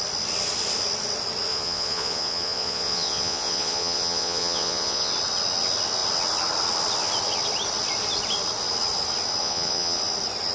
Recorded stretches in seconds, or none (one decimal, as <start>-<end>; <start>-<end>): 0.0-1.5; 5.1-9.4; 10.0-10.5